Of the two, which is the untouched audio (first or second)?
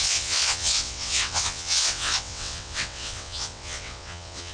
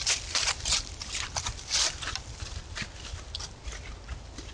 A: second